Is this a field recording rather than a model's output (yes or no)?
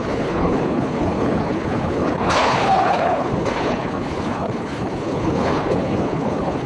no